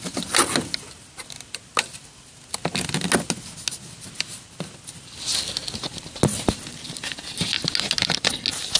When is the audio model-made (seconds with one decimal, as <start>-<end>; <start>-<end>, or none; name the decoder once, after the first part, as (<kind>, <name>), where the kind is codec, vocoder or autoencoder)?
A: none